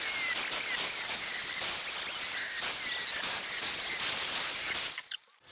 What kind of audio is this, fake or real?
real